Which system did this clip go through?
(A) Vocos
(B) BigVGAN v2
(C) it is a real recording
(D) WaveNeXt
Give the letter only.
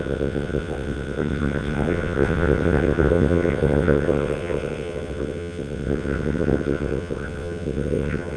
D